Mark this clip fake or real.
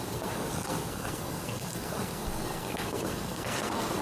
fake